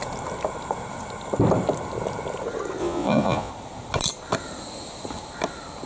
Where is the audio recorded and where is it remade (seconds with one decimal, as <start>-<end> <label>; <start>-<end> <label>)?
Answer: 0.0-2.8 recorded; 2.8-3.5 remade; 3.5-5.9 recorded